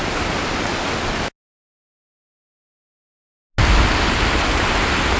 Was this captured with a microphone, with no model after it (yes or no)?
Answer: yes